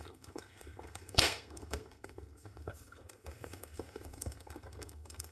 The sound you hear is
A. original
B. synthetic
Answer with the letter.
B